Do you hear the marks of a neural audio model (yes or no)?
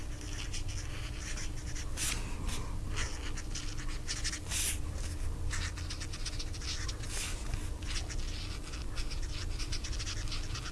no